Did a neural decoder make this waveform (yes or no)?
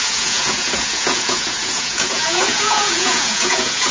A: yes